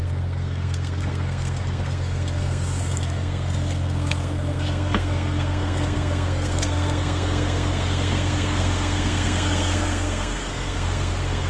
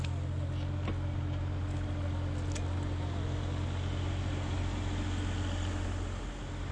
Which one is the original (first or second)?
second